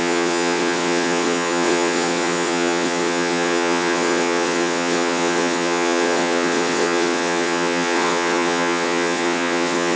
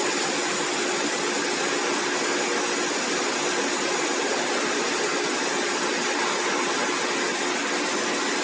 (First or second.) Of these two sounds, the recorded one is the second